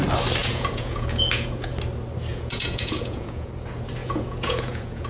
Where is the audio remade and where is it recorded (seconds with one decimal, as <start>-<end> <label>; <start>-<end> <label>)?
0.0-0.4 recorded; 0.4-1.7 remade; 1.7-2.3 recorded; 2.3-3.5 remade; 3.5-4.0 recorded; 4.0-5.1 remade